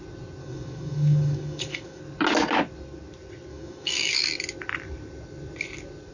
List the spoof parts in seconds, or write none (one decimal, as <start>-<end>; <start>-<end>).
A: 0.4-2.0; 3.5-4.1